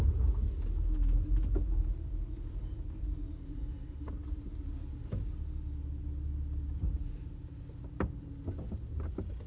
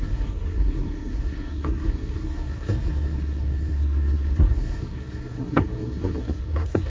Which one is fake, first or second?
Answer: second